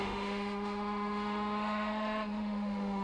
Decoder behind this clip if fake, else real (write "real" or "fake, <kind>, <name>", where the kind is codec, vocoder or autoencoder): fake, autoencoder, DAC-VAE